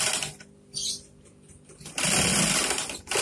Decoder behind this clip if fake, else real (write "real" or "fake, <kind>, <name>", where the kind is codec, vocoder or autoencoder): real